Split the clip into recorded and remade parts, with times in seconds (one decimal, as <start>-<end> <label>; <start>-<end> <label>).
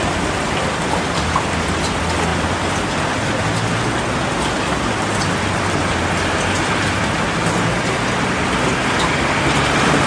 0.0-10.1 recorded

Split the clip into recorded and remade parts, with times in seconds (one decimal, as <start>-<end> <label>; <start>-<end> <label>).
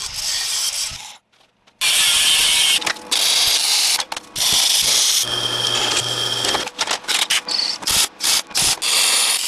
0.0-9.5 recorded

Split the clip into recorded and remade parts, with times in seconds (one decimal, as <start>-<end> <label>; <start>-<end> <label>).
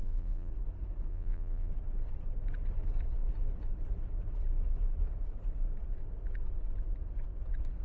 0.0-0.5 remade; 0.5-1.1 recorded; 1.1-1.7 remade; 1.7-7.8 recorded